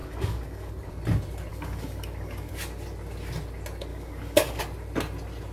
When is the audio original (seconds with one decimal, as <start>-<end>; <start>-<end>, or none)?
0.7-1.5; 2.5-3.9; 4.6-5.5